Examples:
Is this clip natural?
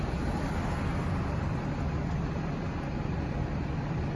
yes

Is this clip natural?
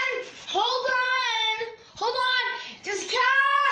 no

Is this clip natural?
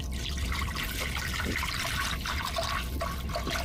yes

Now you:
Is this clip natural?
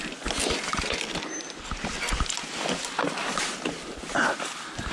yes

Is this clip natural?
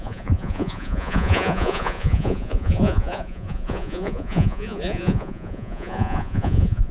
no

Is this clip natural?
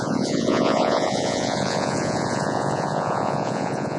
no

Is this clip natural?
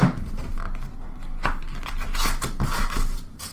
yes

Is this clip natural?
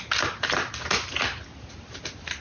yes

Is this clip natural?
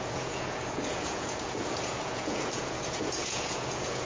no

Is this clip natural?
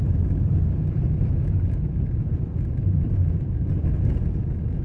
no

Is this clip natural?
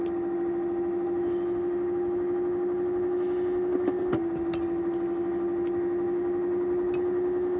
yes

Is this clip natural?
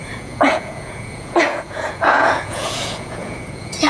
no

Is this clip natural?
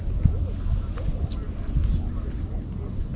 yes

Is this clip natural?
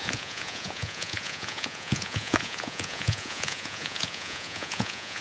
no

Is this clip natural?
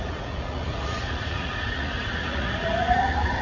no